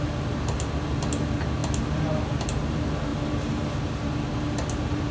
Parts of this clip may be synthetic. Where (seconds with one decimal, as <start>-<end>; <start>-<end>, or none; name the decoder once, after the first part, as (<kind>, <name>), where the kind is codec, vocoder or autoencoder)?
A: none